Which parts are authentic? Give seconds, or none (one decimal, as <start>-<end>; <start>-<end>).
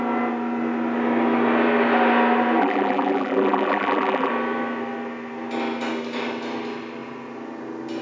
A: 0.0-2.6; 4.3-8.0